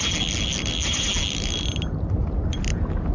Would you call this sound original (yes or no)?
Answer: yes